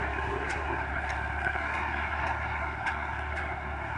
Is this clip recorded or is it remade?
remade